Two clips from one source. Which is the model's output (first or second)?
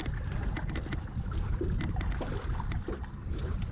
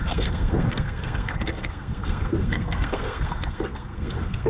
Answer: second